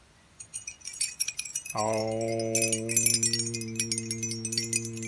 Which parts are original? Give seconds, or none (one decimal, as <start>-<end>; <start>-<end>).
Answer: 2.0-5.1